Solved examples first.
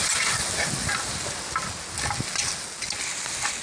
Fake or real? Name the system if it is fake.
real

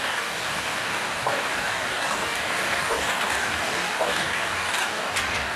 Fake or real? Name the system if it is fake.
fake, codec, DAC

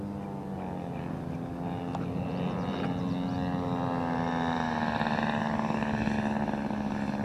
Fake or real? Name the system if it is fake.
real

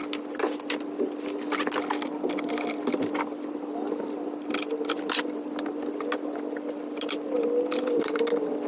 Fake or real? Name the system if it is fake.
real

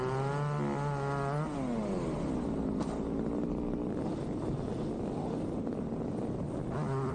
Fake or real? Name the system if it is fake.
real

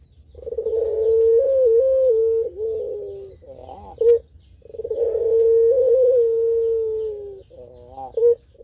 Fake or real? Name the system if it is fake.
real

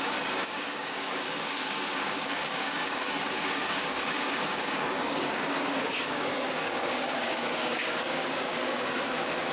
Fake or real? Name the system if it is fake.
fake, codec, DAC